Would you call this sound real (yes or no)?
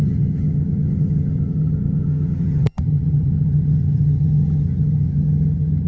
no